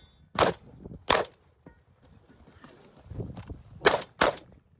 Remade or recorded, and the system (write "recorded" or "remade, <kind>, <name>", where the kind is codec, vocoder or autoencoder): remade, vocoder, BigVGAN v2